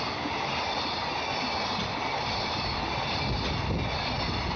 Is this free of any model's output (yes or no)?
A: yes